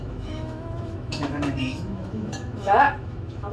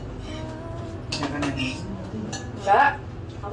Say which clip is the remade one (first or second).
first